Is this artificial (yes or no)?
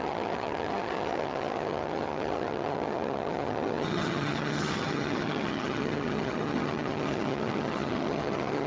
yes